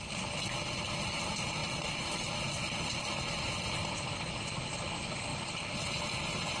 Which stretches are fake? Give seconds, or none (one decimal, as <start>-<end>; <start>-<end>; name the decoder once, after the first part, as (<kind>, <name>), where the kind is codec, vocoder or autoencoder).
0.0-1.6 (vocoder, BigVGAN v2); 2.4-5.3